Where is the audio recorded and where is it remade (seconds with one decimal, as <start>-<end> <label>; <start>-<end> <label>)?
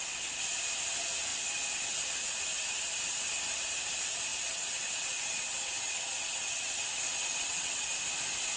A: 0.0-4.3 recorded; 4.3-7.8 remade; 7.8-8.6 recorded